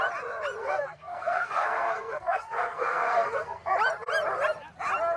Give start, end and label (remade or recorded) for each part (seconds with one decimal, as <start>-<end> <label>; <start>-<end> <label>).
0.0-0.6 recorded; 0.6-3.7 remade; 3.7-5.2 recorded